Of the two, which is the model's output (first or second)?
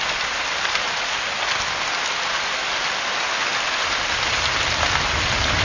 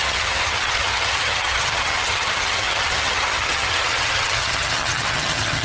second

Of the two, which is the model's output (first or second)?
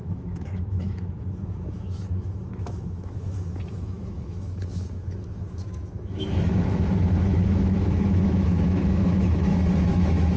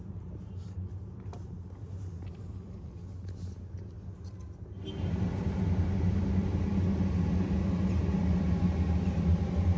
first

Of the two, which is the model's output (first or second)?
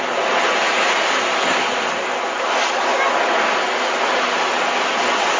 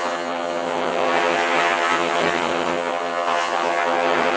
second